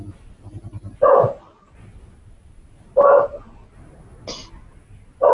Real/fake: real